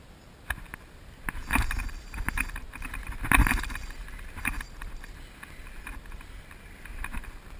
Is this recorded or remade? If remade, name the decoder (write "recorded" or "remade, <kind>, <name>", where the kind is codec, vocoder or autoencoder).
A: recorded